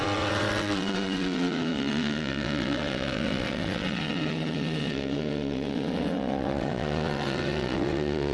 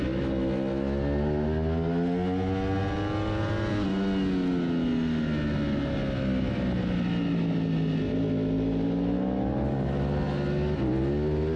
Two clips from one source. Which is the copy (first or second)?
first